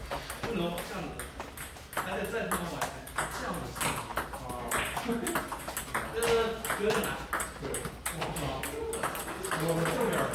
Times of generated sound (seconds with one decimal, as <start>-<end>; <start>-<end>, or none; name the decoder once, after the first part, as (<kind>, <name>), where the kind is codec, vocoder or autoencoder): none